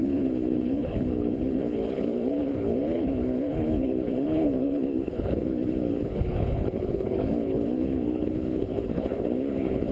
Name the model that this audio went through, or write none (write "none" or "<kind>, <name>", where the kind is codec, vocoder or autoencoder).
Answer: codec, HILCodec